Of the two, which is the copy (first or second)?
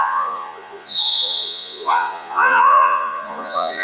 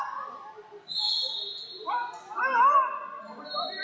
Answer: first